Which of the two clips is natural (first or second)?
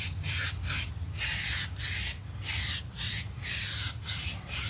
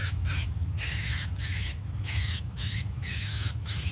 first